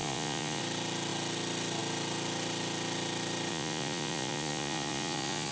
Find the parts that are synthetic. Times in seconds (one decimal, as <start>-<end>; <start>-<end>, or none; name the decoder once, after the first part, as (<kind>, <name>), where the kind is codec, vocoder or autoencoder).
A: 0.0-0.6 (vocoder, Vocos); 3.5-5.5